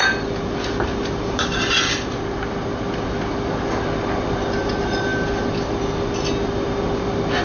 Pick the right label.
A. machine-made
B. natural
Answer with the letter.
B